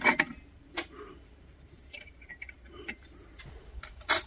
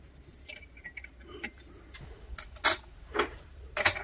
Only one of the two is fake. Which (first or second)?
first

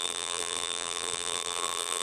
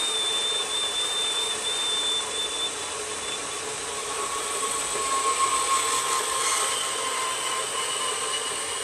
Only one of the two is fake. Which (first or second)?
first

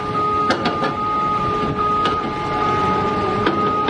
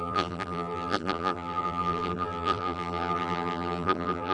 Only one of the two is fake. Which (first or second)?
second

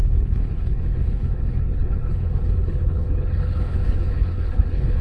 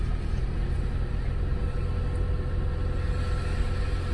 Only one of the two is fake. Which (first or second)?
first